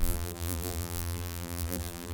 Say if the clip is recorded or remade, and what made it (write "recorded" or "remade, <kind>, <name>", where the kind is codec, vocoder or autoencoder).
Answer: remade, vocoder, BigVGAN v2